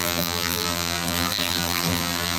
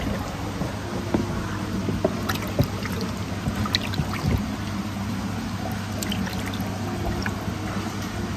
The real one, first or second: second